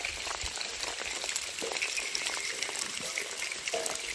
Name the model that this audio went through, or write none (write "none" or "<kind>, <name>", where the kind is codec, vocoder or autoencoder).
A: vocoder, BigVGAN v2